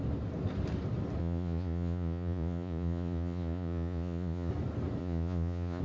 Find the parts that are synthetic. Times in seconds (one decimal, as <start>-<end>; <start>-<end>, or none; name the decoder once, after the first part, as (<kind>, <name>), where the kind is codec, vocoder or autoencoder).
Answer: 1.2-4.5 (vocoder, Vocos); 5.0-5.8